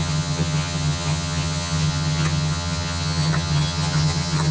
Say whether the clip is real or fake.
fake